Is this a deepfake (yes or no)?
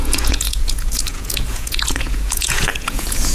yes